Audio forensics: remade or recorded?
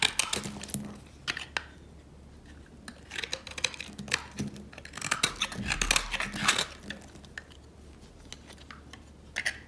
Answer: recorded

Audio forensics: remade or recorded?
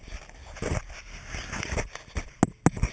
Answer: recorded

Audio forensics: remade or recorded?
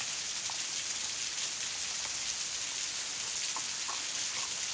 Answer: recorded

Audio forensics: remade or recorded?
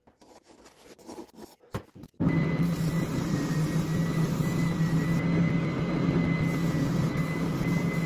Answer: recorded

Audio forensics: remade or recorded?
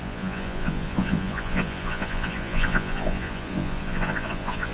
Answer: remade